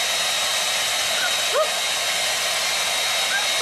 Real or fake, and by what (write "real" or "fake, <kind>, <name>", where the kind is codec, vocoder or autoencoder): real